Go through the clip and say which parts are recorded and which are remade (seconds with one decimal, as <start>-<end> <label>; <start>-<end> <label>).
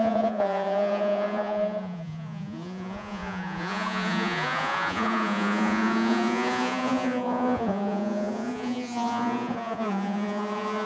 0.0-10.9 remade